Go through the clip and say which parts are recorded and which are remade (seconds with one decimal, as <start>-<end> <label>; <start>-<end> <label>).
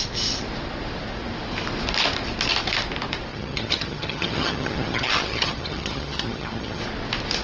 0.0-3.3 recorded; 3.3-6.8 remade; 6.8-7.4 recorded